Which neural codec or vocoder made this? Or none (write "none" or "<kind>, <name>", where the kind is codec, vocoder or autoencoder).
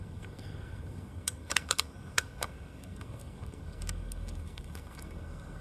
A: codec, SNAC